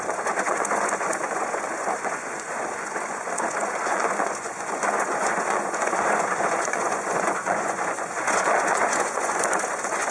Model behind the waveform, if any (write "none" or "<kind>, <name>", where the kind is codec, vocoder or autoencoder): vocoder, Vocos